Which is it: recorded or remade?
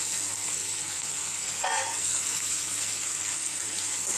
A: remade